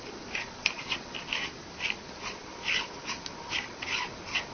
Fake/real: real